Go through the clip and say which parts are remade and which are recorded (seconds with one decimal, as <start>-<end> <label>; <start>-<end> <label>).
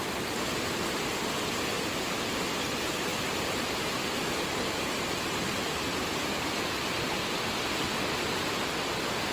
0.0-3.1 recorded; 3.1-4.0 remade; 4.0-6.3 recorded; 6.3-8.9 remade; 8.9-9.3 recorded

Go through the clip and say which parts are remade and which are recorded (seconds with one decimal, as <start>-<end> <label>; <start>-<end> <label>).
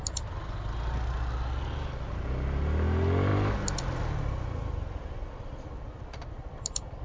0.0-7.0 recorded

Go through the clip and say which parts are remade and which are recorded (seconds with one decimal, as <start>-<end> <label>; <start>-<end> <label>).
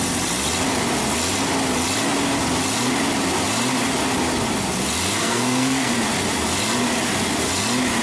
0.0-5.2 recorded; 5.2-5.9 remade; 5.9-8.0 recorded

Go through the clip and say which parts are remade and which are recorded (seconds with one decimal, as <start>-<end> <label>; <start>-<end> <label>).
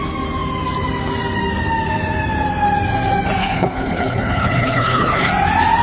0.0-3.4 recorded; 3.4-5.3 remade; 5.3-5.8 recorded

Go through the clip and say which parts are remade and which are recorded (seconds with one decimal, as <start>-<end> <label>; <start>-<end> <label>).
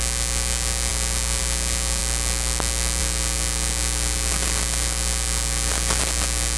0.0-6.6 recorded